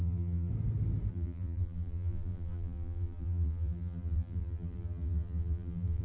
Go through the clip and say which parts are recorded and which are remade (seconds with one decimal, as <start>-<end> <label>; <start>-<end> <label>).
0.0-0.5 remade; 0.5-1.1 recorded; 1.1-6.0 remade